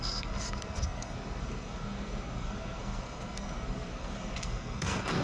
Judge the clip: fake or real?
fake